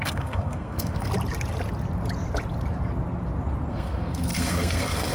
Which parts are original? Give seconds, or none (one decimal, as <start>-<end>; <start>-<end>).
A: 1.1-3.7